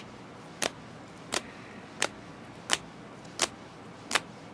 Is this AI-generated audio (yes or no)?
no